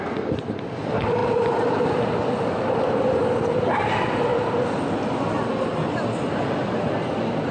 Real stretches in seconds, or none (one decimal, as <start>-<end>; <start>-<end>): 0.0-7.5